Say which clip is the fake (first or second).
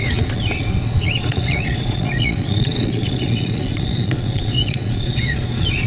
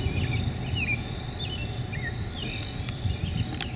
first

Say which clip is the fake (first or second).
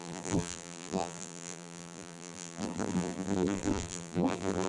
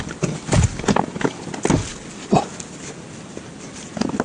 first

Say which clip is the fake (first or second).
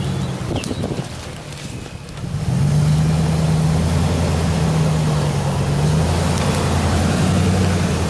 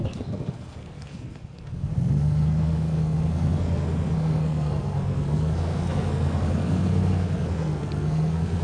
second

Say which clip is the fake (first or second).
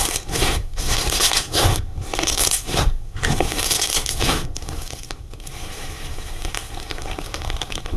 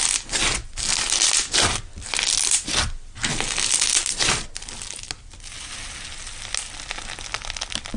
first